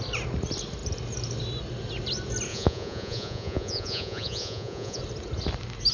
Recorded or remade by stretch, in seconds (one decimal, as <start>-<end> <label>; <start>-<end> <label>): 0.0-2.5 recorded; 2.5-5.0 remade; 5.0-5.9 recorded